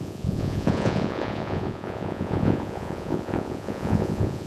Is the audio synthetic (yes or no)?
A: yes